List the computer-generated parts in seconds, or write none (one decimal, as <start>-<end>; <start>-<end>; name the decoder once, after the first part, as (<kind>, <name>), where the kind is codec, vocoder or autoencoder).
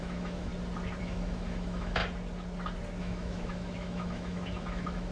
0.0-0.5 (autoencoder, DAC-VAE); 1.0-2.0; 3.0-5.1